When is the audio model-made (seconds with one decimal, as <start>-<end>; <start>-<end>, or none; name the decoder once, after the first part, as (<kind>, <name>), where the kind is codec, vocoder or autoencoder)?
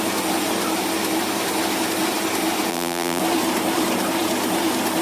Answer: 2.7-3.2 (vocoder, BigVGAN v2)